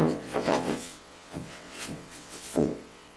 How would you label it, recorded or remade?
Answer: remade